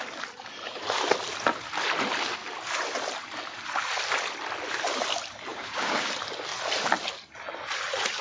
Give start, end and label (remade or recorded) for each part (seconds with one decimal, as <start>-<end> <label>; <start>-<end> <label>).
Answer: 0.0-5.5 recorded; 5.5-6.1 remade; 6.1-8.2 recorded

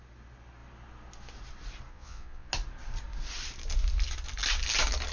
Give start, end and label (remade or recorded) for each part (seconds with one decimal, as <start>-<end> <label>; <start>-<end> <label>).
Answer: 0.0-1.9 recorded; 1.9-2.5 remade; 2.5-5.1 recorded